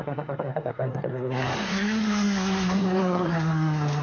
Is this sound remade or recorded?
remade